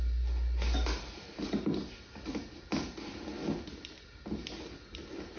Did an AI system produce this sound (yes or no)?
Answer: no